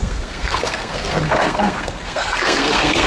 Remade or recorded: remade